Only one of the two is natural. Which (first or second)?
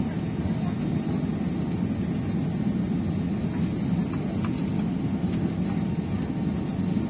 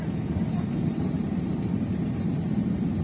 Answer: first